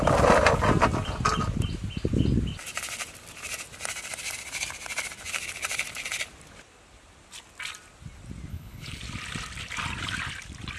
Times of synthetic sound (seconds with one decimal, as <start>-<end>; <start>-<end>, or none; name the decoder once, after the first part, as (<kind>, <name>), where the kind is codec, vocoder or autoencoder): 8.5-9.0 (codec, HILCodec)